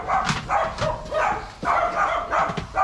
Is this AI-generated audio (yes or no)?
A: no